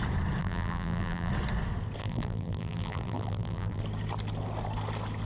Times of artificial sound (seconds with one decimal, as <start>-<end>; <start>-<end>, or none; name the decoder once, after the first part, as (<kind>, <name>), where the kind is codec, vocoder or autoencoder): 0.4-1.3 (vocoder, BigVGAN v2); 2.0-3.8